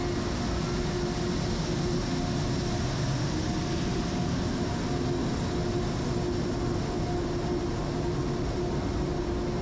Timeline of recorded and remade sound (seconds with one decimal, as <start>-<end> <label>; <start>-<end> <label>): 0.0-9.6 recorded